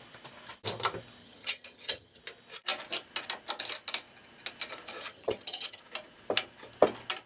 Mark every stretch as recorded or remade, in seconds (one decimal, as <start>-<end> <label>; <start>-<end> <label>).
0.0-1.2 recorded; 1.2-2.2 remade; 2.2-4.9 recorded; 4.9-5.8 remade; 5.8-7.3 recorded